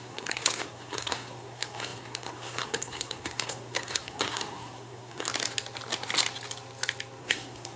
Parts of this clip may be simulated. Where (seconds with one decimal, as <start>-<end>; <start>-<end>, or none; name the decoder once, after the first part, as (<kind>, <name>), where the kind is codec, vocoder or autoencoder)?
0.0-5.3 (codec, SNAC); 7.2-7.8